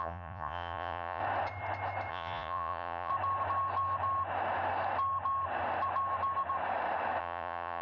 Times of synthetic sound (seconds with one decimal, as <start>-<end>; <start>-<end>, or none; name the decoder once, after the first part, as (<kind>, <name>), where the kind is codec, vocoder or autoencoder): 0.0-1.2 (vocoder, Vocos); 2.1-3.1; 7.2-7.8